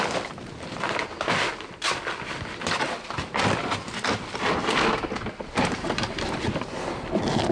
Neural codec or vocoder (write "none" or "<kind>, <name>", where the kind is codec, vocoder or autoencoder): none